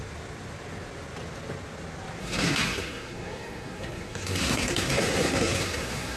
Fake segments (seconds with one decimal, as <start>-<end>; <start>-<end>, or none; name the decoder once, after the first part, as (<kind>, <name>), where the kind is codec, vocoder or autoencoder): 2.2-6.2 (codec, SNAC)